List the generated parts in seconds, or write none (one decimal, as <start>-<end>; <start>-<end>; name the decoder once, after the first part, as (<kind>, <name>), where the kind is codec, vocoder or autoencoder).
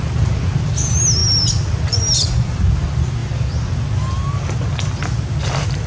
none